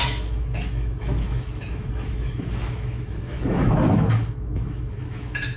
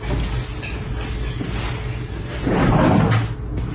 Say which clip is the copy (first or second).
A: first